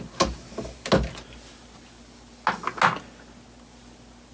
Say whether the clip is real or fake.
real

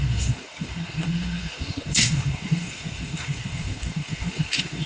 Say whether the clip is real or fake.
fake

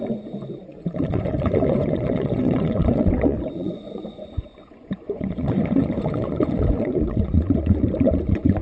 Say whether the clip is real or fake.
fake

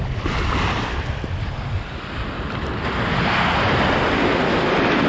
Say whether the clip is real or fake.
real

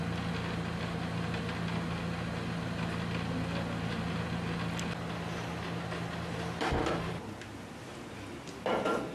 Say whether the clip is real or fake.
real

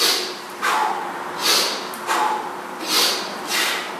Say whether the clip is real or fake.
fake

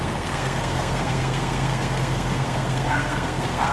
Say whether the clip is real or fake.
fake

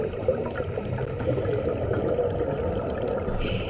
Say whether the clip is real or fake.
real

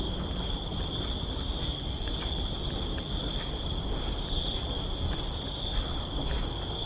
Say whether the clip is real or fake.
real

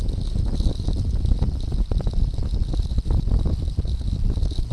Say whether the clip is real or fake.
real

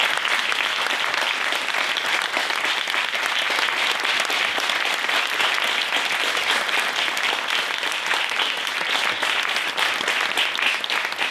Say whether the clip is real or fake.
real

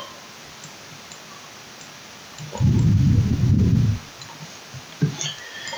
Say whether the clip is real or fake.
real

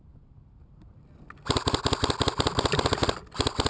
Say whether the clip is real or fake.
real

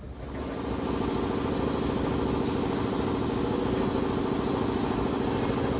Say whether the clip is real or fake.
real